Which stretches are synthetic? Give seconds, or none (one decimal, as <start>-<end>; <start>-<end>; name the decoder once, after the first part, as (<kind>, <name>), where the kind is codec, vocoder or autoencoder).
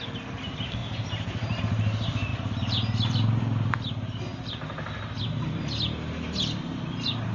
none